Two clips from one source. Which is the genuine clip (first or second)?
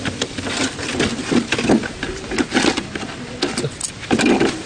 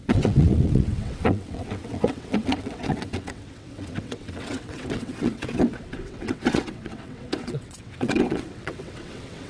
first